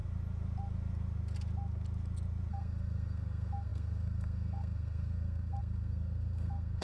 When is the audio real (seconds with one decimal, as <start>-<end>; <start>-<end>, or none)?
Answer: 0.0-2.5